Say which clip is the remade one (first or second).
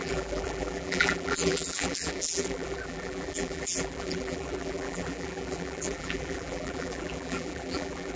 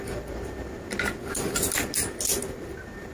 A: first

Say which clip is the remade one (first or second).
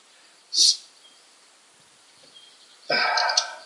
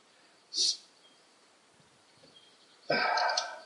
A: second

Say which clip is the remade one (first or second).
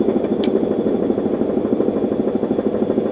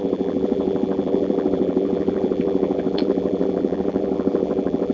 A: second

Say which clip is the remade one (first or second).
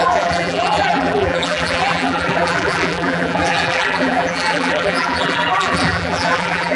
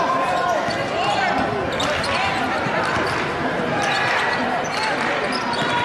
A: first